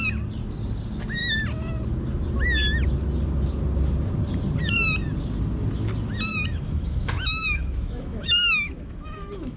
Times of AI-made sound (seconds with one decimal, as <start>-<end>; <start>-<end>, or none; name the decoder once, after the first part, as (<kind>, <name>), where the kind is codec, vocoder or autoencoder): 6.3-9.6 (autoencoder, DAC-VAE)